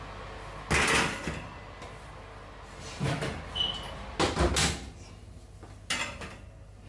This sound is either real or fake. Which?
real